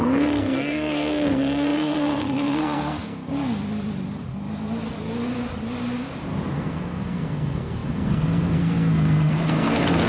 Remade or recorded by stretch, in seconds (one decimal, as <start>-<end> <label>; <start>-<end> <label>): 0.0-3.3 remade; 3.3-6.5 recorded; 6.5-10.1 remade